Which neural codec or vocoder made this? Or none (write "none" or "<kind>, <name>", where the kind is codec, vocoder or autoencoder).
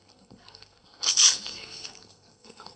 codec, SNAC